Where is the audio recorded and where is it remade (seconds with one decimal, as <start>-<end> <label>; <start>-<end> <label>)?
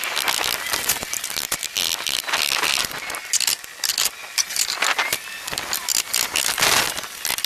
0.0-7.5 recorded